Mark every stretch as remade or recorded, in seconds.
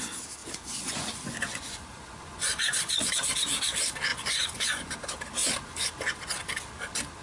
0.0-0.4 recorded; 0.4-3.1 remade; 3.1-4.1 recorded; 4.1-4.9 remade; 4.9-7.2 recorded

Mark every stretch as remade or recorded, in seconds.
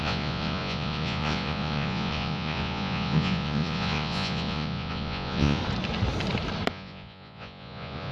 0.0-5.6 remade; 5.6-6.7 recorded; 6.7-8.1 remade